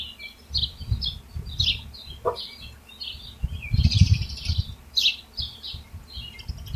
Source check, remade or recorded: remade